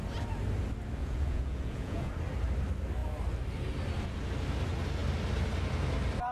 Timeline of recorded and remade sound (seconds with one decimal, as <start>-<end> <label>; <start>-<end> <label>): 0.0-1.0 recorded; 1.0-2.1 remade; 2.1-6.3 recorded